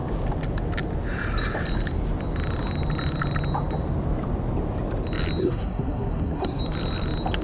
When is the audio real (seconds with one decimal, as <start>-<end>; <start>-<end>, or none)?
0.0-5.4; 6.6-7.4